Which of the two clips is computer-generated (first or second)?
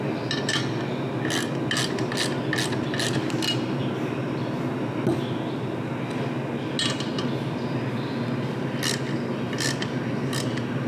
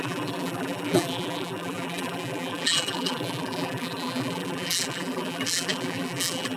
second